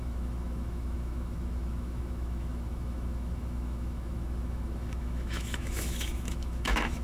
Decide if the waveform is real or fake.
fake